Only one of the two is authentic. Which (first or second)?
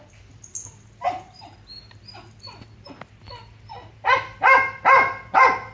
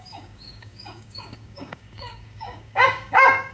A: first